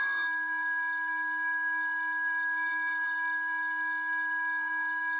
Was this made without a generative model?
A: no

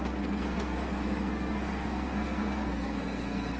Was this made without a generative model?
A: no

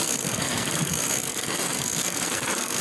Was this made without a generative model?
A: no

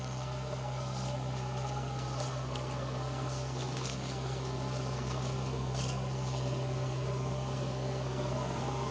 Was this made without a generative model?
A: no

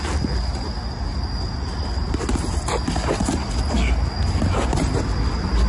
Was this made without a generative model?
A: yes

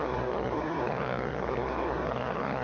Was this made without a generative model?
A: no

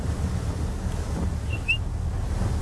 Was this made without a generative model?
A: yes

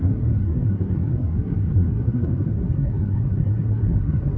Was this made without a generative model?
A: no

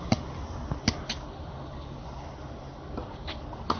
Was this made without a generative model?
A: yes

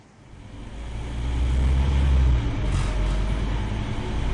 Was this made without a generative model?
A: yes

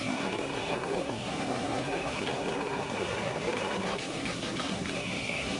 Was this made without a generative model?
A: no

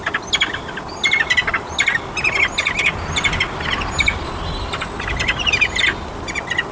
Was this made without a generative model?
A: yes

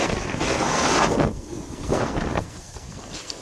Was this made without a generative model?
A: no